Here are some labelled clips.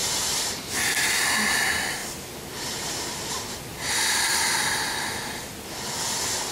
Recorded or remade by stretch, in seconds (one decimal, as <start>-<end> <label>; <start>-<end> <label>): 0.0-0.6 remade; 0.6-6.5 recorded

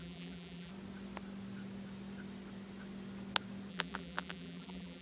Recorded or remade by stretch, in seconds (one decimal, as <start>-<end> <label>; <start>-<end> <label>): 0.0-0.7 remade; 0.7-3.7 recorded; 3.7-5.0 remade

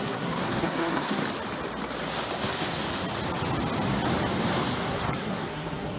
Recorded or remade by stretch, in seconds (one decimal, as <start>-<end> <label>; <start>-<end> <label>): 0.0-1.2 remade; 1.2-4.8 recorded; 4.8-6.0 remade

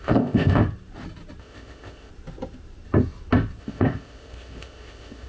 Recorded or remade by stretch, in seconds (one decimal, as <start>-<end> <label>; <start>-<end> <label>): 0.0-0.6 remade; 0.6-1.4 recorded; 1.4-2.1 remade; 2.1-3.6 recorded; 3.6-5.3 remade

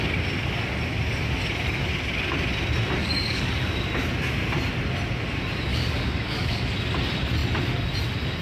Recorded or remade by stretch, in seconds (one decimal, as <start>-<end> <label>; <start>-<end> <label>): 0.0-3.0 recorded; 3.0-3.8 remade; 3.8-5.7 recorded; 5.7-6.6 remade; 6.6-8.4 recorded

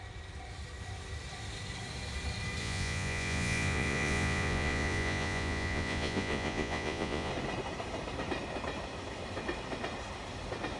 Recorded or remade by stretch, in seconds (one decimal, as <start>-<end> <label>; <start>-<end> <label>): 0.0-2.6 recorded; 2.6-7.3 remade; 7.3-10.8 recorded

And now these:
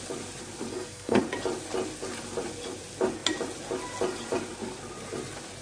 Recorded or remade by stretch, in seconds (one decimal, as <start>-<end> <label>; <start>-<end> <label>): 0.0-0.7 recorded; 0.7-1.2 remade; 1.2-5.6 recorded